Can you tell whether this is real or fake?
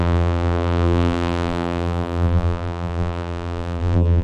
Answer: fake